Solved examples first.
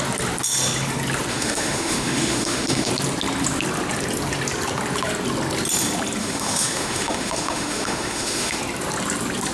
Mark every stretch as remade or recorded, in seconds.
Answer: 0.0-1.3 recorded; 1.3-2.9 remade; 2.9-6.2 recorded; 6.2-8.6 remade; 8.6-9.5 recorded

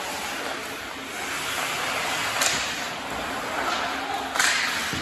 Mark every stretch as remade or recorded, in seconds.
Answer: 0.0-2.2 recorded; 2.2-2.9 remade; 2.9-5.0 recorded

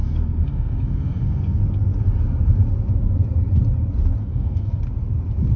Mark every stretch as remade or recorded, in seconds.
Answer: 0.0-1.6 remade; 1.6-4.2 recorded; 4.2-4.8 remade; 4.8-5.6 recorded

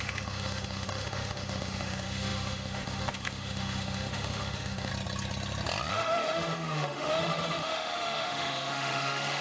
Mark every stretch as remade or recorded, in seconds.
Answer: 0.0-4.9 remade; 4.9-5.9 recorded; 5.9-9.4 remade

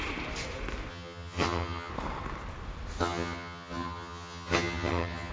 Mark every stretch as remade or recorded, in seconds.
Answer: 0.0-0.9 recorded; 0.9-1.9 remade; 1.9-3.0 recorded; 3.0-5.3 remade

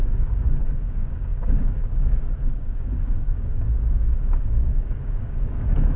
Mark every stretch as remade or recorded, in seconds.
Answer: 0.0-6.0 remade

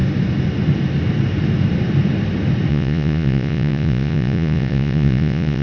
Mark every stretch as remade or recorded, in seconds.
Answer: 0.0-2.7 recorded; 2.7-5.6 remade